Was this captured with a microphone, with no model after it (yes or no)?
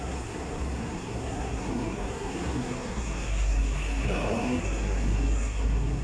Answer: no